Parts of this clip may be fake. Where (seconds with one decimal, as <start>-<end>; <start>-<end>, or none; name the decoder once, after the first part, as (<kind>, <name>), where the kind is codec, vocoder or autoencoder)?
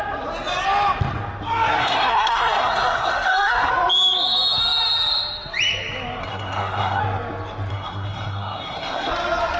1.8-3.7 (codec, SNAC); 6.2-7.0; 7.7-9.1